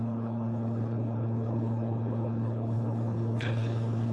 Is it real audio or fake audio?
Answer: fake